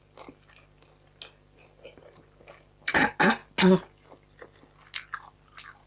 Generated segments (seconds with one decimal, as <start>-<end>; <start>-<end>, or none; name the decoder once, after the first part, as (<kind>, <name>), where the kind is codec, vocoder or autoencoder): none